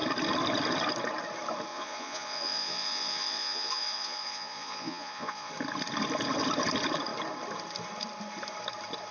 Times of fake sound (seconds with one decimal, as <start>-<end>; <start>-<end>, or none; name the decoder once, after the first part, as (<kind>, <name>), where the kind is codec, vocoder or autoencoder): 1.7-5.5 (vocoder, Vocos)